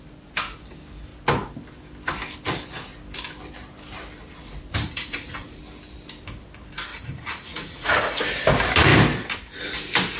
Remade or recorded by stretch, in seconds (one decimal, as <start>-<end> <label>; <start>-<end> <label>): 0.0-4.8 recorded; 4.8-5.6 remade; 5.6-6.9 recorded; 6.9-8.2 remade; 8.2-10.2 recorded